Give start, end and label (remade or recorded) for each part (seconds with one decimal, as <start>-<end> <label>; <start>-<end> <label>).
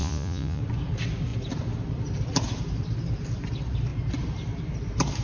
0.0-0.6 remade; 0.6-5.2 recorded